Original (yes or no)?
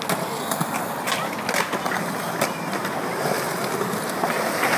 yes